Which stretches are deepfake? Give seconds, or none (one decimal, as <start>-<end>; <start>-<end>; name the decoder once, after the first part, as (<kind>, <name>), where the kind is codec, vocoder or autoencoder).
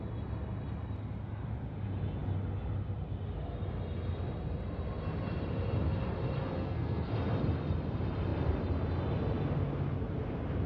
6.6-7.1 (codec, SNAC)